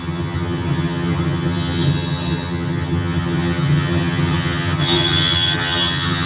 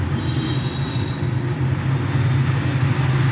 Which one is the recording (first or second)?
second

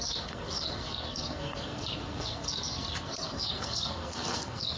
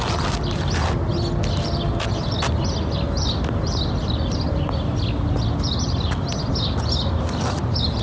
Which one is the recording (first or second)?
second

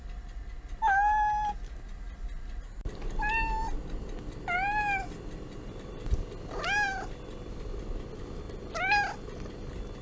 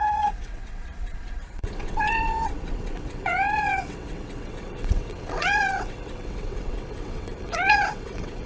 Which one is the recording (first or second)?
first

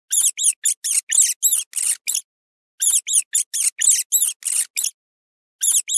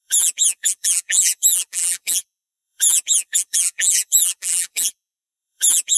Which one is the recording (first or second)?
first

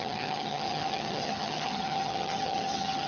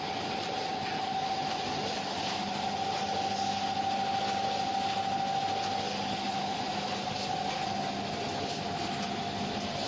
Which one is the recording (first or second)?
second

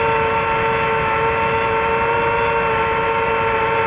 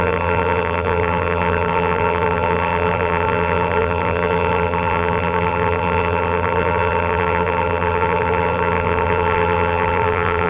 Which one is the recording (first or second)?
first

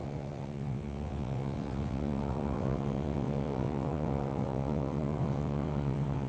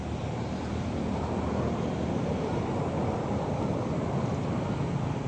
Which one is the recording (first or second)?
second